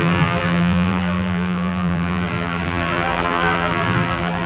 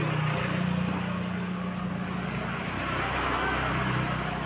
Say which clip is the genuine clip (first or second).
second